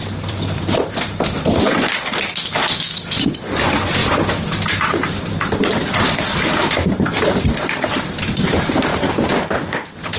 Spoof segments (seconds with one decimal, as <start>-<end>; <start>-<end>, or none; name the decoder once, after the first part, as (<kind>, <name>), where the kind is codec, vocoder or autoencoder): 0.0-0.9 (vocoder, BigVGAN v2); 4.0-7.3; 8.9-10.2